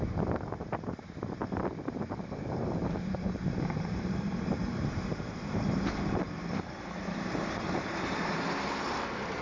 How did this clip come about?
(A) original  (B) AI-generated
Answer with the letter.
B